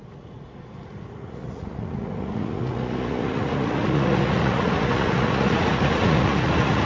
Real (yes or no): no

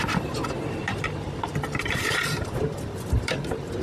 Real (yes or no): no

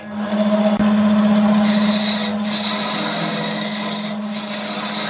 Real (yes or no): yes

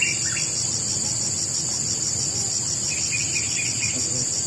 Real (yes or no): yes